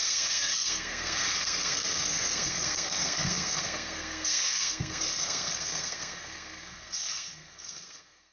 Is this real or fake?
fake